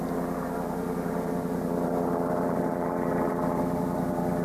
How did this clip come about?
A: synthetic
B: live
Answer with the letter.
A